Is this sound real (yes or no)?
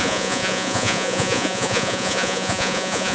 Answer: no